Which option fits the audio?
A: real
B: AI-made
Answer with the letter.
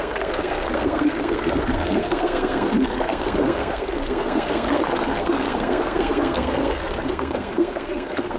B